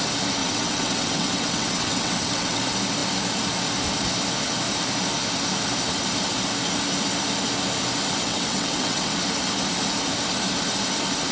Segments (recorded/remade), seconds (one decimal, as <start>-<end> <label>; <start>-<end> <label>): 0.0-0.4 recorded; 0.4-2.6 remade; 2.6-8.3 recorded; 8.3-9.1 remade; 9.1-11.3 recorded

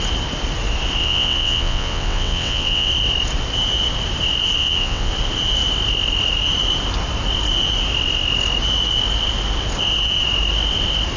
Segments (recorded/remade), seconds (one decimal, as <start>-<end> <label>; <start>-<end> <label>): 0.0-1.0 recorded; 1.0-2.9 remade; 2.9-4.6 recorded; 4.6-5.1 remade; 5.1-11.2 recorded

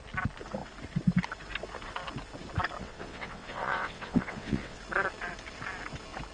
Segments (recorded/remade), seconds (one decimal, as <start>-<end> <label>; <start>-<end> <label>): 0.0-2.8 recorded; 2.8-4.8 remade; 4.8-6.3 recorded